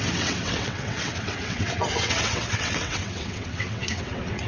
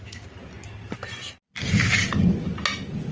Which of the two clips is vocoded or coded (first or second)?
first